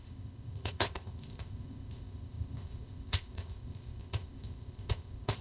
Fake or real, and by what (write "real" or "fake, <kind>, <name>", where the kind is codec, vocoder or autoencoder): fake, codec, ZipCodec